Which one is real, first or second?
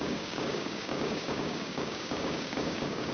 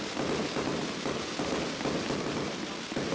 second